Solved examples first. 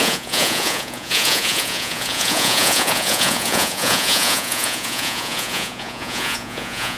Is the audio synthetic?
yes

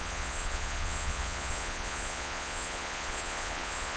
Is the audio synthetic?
yes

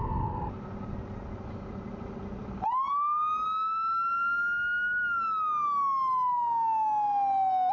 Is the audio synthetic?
no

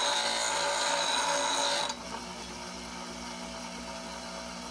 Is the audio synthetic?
no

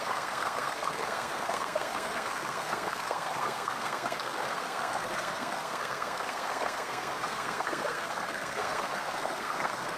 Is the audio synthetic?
yes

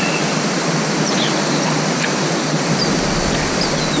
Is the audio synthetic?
no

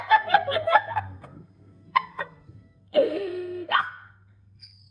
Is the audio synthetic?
yes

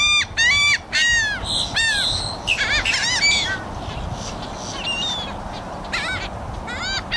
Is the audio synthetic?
no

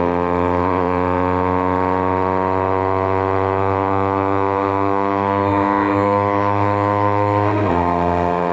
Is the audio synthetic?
yes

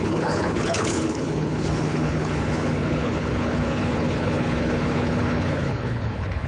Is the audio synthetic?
yes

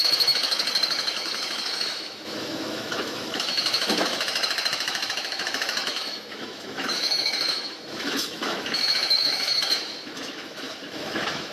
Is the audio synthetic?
yes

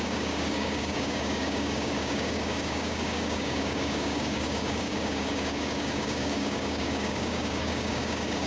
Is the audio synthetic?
yes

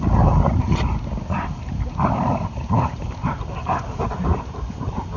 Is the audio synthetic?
no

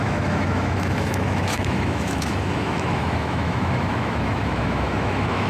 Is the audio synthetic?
yes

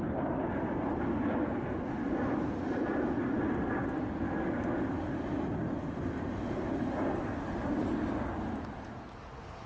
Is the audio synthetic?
no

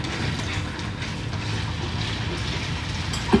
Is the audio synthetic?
no